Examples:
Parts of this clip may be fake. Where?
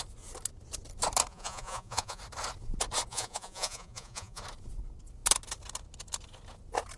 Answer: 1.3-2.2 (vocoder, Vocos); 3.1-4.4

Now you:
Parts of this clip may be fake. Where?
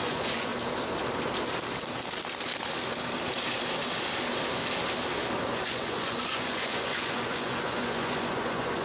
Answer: 0.0-0.5 (vocoder, Vocos); 5.5-8.8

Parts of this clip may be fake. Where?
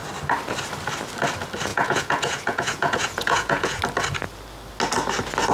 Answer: 1.7-3.8 (vocoder, Vocos)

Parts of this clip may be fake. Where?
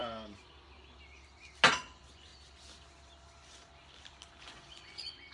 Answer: 1.7-2.3 (vocoder, Vocos); 4.4-5.3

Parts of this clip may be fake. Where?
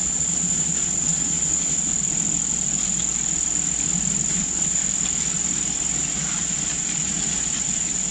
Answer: 0.0-1.9 (vocoder, Vocos); 4.3-4.8